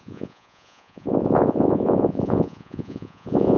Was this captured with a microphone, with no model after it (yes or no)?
no